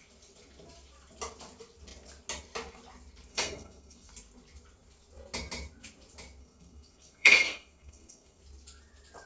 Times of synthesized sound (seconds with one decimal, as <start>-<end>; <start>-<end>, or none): 3.3-4.1; 6.4-8.4